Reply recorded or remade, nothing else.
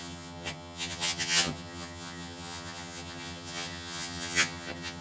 remade